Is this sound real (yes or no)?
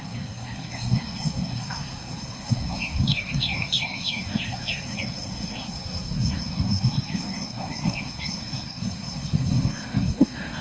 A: no